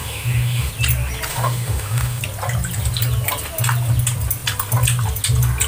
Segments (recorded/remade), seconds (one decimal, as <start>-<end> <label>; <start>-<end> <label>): 0.0-0.7 remade; 0.7-1.3 recorded; 1.3-2.2 remade; 2.2-5.7 recorded